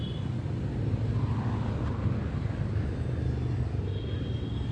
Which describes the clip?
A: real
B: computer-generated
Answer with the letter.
A